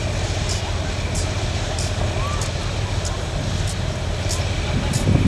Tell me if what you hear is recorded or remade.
recorded